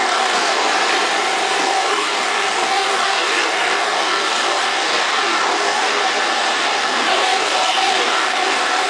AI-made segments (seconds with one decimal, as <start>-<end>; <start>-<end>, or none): 0.0-0.7; 1.6-6.0; 6.6-8.9